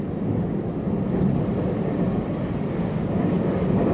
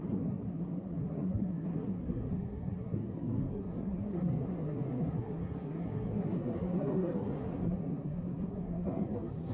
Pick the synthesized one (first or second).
second